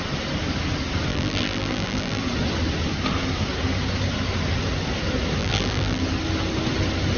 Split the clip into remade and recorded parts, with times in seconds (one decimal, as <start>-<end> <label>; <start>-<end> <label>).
0.0-1.1 recorded; 1.1-2.2 remade; 2.2-5.4 recorded; 5.4-6.0 remade; 6.0-7.2 recorded